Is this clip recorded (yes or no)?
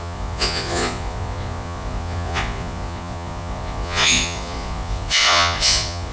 no